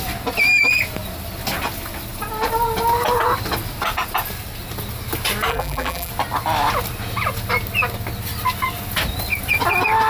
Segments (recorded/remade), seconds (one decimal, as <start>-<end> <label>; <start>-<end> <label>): 0.0-5.5 recorded; 5.5-6.1 remade; 6.1-10.1 recorded